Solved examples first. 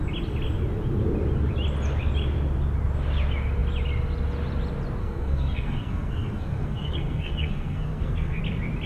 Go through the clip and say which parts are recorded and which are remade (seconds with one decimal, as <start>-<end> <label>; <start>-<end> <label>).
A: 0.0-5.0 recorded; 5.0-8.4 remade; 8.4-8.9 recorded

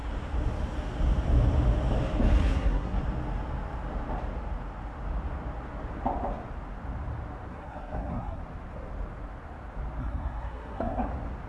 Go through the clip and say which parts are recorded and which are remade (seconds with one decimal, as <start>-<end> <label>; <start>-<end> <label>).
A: 0.0-2.4 recorded; 2.4-3.0 remade; 3.0-7.5 recorded; 7.5-8.4 remade; 8.4-10.0 recorded; 10.0-11.1 remade; 11.1-11.5 recorded

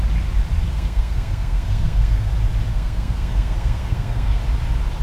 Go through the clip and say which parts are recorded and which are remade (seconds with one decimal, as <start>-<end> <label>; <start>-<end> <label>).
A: 0.0-0.7 recorded; 0.7-2.3 remade; 2.3-2.7 recorded; 2.7-4.4 remade; 4.4-5.0 recorded